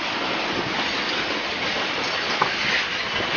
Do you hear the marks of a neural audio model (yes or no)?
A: no